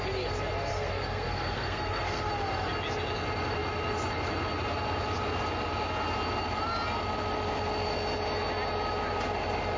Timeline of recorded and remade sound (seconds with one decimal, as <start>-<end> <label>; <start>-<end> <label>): 0.0-0.7 recorded; 0.7-2.3 remade; 2.3-9.8 recorded